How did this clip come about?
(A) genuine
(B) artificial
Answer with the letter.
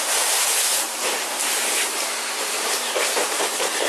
B